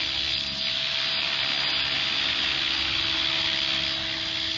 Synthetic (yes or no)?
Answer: no